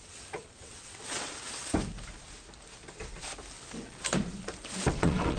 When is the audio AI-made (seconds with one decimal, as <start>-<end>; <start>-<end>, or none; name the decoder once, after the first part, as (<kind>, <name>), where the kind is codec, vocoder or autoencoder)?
0.0-1.7 (vocoder, WaveNeXt); 4.9-5.4